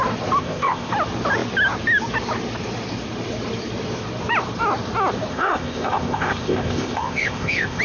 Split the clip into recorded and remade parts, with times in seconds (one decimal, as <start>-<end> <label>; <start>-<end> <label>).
0.0-0.4 recorded; 0.4-0.9 remade; 0.9-5.3 recorded; 5.3-7.8 remade